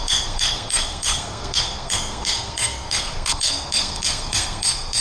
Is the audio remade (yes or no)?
yes